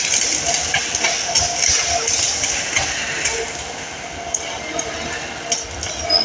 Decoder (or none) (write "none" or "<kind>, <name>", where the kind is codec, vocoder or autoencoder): none